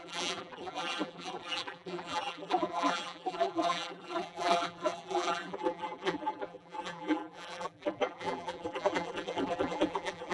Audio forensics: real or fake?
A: fake